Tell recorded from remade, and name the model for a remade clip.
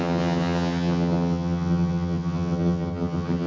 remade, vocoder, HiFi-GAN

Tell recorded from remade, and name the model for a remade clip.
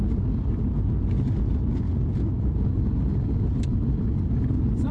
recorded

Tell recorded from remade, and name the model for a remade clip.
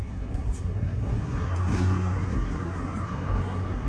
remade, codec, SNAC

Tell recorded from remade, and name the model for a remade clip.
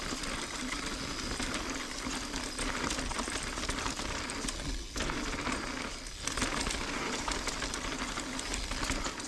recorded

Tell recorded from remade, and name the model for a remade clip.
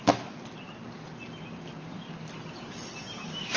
recorded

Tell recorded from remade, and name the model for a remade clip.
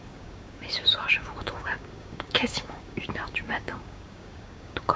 remade, codec, DAC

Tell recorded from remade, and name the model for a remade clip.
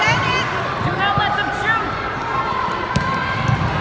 recorded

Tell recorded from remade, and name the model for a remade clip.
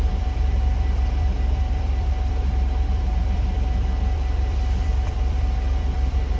remade, vocoder, BigVGAN v2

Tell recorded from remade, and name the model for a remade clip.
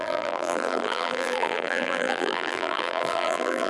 remade, vocoder, BigVGAN v2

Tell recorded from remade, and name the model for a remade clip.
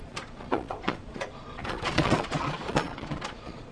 remade, vocoder, Vocos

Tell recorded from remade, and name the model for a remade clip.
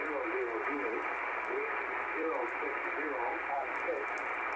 remade, vocoder, BigVGAN v2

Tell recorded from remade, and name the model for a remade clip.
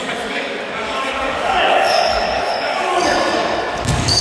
remade, codec, DAC